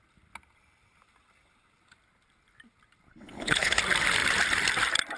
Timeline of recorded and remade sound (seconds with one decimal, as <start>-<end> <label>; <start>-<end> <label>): 0.0-3.1 recorded; 3.1-3.8 remade; 3.8-5.2 recorded